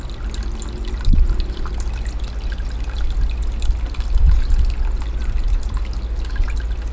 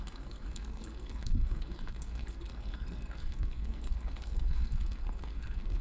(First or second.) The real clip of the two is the first